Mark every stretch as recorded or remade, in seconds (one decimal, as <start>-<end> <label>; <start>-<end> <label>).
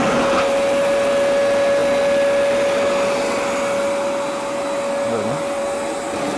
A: 0.0-6.4 recorded